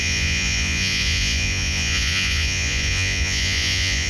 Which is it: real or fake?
fake